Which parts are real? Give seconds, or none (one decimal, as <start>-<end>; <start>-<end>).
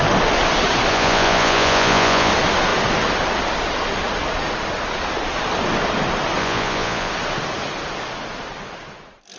0.0-0.9; 2.3-6.4; 7.1-9.4